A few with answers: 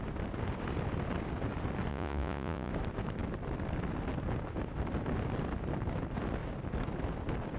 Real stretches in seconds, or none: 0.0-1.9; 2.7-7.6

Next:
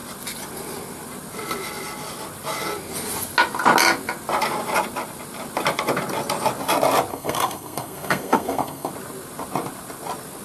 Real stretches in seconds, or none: 0.0-7.1; 8.9-10.4

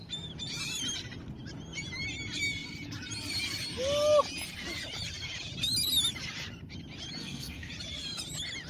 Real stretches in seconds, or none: 0.0-7.2; 7.7-8.7

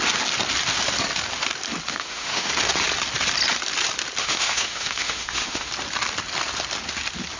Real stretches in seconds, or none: 0.0-1.9; 2.5-4.2; 5.7-7.4